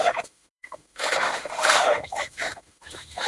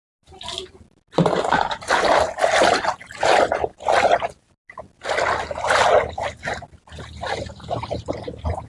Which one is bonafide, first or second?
second